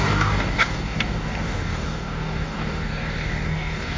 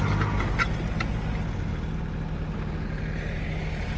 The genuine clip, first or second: second